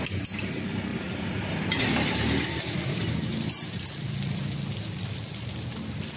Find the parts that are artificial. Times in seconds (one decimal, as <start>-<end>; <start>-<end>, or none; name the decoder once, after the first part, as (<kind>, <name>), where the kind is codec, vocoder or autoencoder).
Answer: 0.9-4.4 (vocoder, BigVGAN v2)